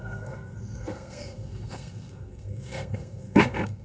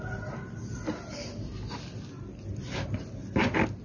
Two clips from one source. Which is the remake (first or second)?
first